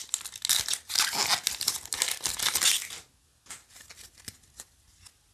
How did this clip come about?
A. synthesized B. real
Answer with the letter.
B